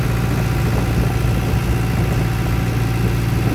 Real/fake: real